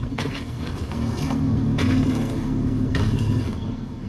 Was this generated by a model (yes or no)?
yes